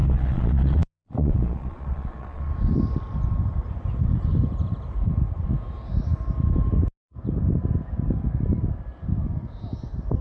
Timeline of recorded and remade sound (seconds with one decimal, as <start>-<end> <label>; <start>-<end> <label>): 0.0-2.5 remade; 2.5-10.2 recorded

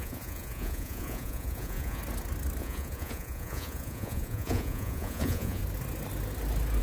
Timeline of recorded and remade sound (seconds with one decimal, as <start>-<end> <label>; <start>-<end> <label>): 0.0-2.0 remade; 2.0-2.6 recorded; 2.6-5.6 remade; 5.6-6.8 recorded

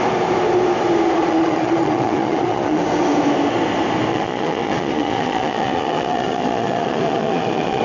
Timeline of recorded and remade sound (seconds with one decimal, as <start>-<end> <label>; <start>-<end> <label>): 0.0-1.2 recorded; 1.2-2.8 remade; 2.8-4.1 recorded; 4.1-7.8 remade

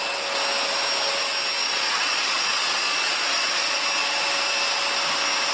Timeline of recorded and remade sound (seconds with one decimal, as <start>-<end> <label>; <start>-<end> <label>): 0.0-1.6 recorded; 1.6-3.9 remade; 3.9-5.5 recorded

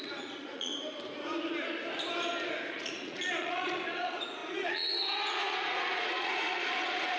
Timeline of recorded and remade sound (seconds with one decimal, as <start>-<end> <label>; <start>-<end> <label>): 0.0-0.7 remade; 0.7-2.7 recorded; 2.7-7.2 remade